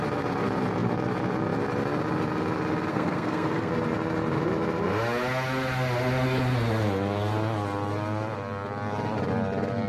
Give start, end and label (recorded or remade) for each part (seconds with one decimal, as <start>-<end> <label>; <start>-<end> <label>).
0.0-2.9 recorded; 2.9-3.7 remade; 3.7-9.9 recorded